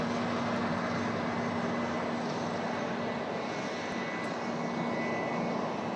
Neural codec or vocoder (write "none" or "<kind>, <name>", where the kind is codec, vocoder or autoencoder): none